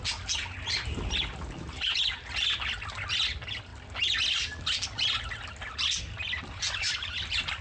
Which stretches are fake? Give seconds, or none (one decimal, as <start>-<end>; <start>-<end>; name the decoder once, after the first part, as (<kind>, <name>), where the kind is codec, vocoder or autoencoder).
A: none